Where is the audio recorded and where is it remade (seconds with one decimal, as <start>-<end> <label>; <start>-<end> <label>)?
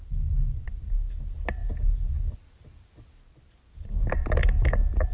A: 0.0-5.1 recorded